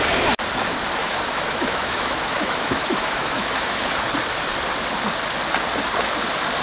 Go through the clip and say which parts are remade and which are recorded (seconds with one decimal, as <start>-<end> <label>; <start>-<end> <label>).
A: 0.0-1.0 recorded; 1.0-3.8 remade; 3.8-6.6 recorded